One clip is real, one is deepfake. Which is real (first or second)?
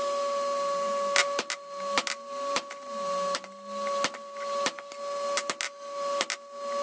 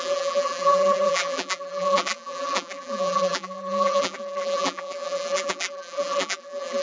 first